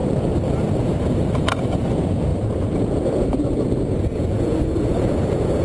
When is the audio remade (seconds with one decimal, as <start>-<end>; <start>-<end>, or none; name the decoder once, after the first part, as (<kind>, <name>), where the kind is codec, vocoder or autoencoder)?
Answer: 0.8-5.6 (vocoder, Vocos)